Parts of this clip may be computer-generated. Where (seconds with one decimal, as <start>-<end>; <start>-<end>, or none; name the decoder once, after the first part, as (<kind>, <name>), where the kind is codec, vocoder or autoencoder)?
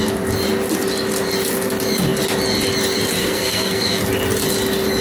3.2-4.0 (codec, SNAC)